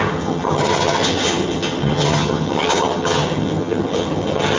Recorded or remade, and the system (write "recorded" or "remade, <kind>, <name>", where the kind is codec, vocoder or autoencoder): remade, vocoder, HiFi-GAN